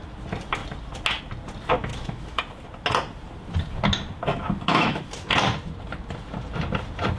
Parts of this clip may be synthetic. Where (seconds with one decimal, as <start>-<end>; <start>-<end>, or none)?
1.9-2.4; 4.3-5.0